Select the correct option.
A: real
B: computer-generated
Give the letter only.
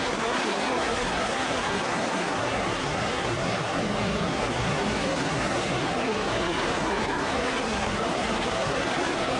B